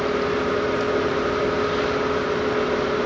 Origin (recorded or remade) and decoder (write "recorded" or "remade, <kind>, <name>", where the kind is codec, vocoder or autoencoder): recorded